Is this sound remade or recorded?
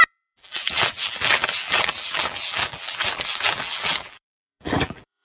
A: remade